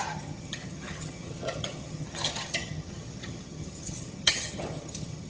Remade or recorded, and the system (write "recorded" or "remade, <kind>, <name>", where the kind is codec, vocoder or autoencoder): remade, vocoder, HiFi-GAN